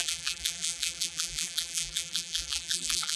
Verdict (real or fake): fake